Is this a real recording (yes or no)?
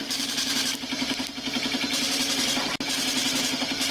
no